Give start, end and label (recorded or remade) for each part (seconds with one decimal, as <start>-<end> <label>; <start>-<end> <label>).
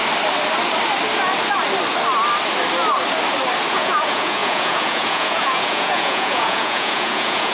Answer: 0.0-3.7 recorded; 3.7-7.5 remade